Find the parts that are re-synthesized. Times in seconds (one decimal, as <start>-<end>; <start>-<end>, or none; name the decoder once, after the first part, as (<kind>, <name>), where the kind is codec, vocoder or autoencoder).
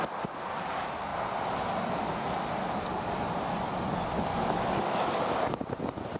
4.3-5.2 (autoencoder, DAC-VAE)